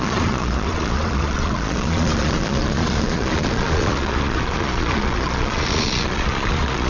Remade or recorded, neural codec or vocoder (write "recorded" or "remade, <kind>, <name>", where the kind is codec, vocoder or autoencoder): remade, vocoder, Vocos